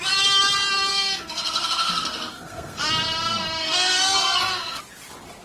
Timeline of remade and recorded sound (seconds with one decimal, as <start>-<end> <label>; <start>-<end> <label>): 0.0-0.9 recorded; 0.9-2.8 remade; 2.8-3.6 recorded; 3.6-4.8 remade; 4.8-5.4 recorded